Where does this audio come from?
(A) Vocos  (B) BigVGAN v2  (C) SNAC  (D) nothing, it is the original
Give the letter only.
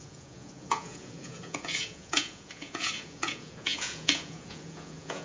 A